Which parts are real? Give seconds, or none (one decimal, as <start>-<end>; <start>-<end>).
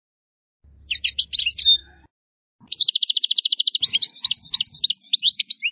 0.0-5.7